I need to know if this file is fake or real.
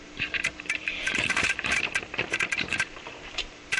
fake